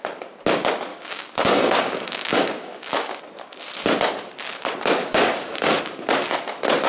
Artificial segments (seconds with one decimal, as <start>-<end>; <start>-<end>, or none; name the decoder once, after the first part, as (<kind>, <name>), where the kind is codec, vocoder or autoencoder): 0.9-3.2 (codec, DAC); 5.0-5.8